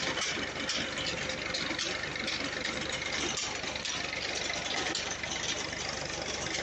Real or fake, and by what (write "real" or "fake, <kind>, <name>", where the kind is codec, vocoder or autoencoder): real